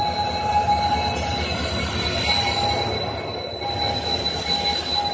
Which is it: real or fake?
real